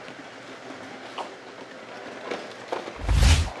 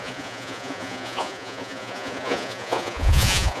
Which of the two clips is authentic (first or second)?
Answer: first